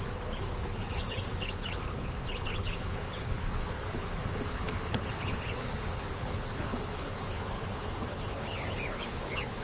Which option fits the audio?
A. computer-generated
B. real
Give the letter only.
A